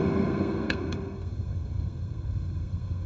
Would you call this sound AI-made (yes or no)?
yes